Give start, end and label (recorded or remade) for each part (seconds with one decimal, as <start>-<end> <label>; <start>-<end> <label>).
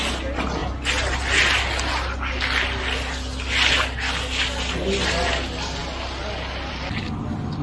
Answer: 0.0-7.6 recorded